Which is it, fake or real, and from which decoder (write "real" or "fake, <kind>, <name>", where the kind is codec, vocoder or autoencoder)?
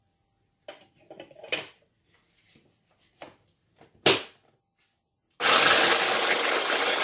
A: real